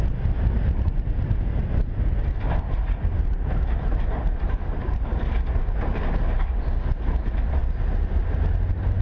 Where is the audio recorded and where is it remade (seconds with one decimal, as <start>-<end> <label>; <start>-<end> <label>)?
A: 0.0-9.0 recorded